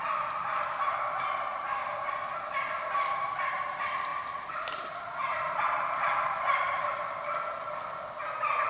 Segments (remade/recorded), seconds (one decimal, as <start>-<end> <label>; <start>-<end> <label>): 0.0-1.5 recorded; 1.5-2.0 remade; 2.0-4.1 recorded; 4.1-5.6 remade; 5.6-8.7 recorded